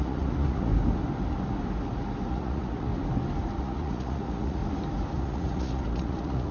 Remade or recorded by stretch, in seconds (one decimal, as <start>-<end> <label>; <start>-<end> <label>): 0.0-0.7 remade; 0.7-2.3 recorded; 2.3-2.9 remade; 2.9-3.6 recorded; 3.6-4.6 remade; 4.6-5.2 recorded; 5.2-6.5 remade